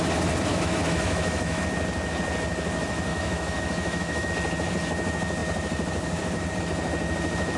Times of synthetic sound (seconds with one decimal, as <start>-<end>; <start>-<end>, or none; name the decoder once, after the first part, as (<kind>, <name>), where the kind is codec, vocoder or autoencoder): 0.5-1.6 (autoencoder, DAC-VAE); 3.1-4.3